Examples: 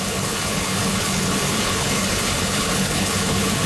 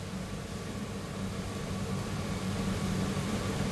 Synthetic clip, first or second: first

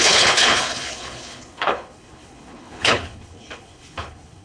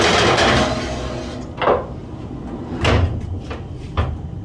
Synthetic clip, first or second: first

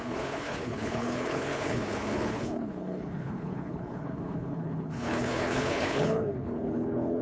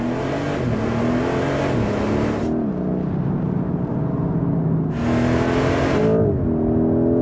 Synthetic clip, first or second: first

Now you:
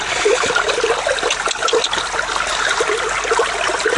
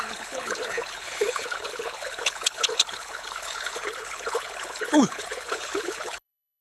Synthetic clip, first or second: second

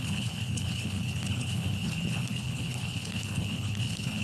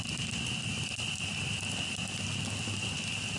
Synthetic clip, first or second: first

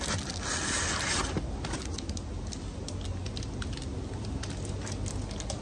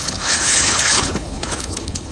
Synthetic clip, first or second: second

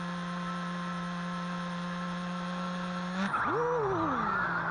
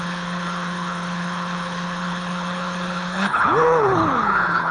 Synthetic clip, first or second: second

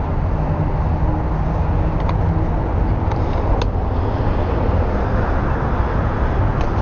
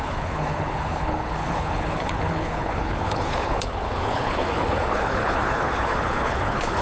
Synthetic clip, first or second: second